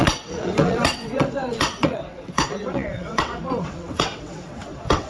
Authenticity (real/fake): fake